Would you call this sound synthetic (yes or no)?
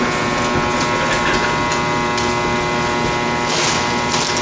no